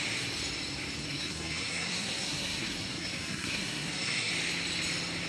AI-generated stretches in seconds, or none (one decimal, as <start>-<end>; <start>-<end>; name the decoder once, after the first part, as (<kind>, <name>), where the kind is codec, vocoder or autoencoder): 1.1-4.3 (codec, SNAC)